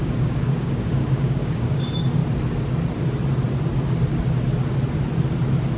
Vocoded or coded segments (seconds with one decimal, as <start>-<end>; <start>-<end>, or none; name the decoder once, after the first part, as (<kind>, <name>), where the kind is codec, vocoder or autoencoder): 0.0-2.2 (codec, DAC)